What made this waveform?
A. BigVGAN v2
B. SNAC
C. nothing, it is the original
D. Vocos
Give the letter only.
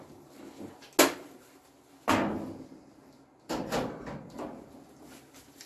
C